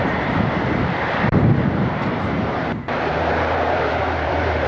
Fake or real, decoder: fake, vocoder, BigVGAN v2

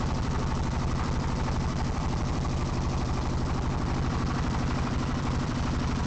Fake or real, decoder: fake, vocoder, BigVGAN v2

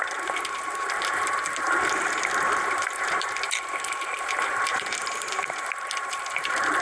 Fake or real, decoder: fake, vocoder, BigVGAN v2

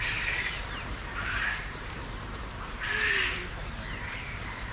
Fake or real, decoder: fake, vocoder, BigVGAN v2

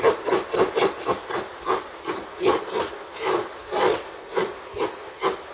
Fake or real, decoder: fake, vocoder, BigVGAN v2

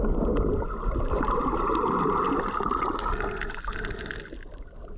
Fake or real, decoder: real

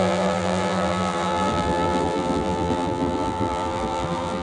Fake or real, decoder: fake, vocoder, BigVGAN v2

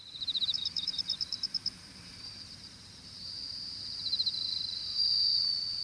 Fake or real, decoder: fake, vocoder, BigVGAN v2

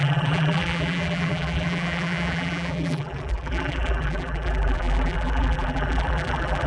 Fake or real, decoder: fake, vocoder, BigVGAN v2